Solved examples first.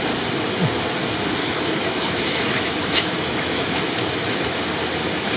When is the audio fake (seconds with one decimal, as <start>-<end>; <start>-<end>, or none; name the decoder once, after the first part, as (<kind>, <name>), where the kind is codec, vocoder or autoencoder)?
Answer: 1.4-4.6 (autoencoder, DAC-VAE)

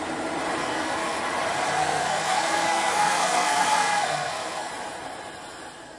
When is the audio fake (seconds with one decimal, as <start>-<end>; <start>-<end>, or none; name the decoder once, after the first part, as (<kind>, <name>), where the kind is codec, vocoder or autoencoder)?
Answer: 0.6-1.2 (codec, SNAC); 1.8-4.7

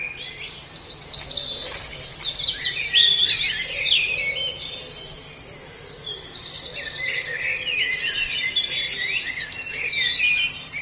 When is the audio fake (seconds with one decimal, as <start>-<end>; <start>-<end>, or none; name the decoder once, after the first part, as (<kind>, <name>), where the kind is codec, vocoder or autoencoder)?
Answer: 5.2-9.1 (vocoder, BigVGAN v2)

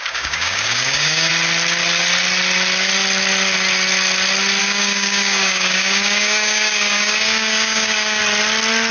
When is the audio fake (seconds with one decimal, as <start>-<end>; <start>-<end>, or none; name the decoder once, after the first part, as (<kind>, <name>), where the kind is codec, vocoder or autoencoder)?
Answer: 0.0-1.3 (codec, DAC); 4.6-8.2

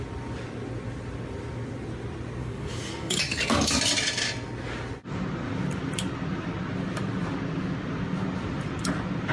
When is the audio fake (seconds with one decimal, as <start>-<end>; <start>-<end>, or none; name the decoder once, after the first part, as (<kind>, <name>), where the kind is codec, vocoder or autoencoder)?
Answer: 2.4-3.8 (codec, DAC)